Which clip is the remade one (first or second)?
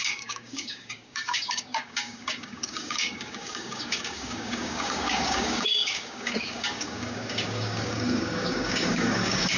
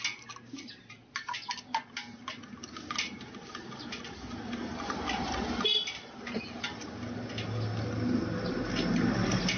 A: first